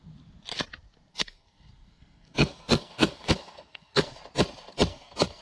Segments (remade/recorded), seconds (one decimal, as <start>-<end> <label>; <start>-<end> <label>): 0.0-1.1 recorded; 1.1-4.2 remade; 4.2-4.9 recorded; 4.9-5.4 remade